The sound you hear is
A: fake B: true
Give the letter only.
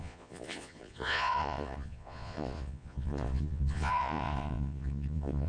A